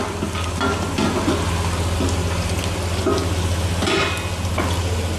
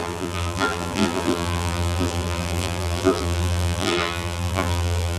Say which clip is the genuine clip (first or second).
first